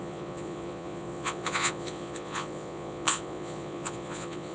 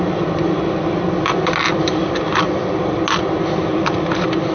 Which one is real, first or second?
second